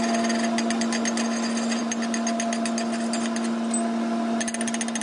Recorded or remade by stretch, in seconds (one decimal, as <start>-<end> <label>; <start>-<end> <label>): 0.0-5.0 recorded